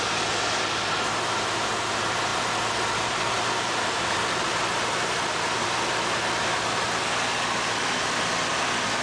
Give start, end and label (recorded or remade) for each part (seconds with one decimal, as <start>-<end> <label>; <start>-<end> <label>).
0.0-9.0 recorded